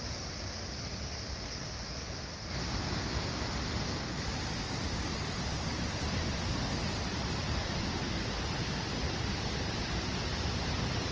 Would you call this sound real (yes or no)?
yes